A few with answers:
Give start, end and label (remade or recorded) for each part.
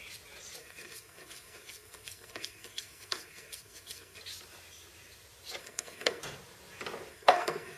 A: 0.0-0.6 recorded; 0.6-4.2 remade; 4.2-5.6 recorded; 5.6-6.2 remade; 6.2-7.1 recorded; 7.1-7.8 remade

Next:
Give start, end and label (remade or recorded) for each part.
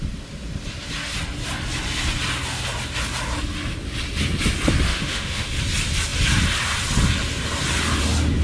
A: 0.0-4.9 recorded; 4.9-5.6 remade; 5.6-8.4 recorded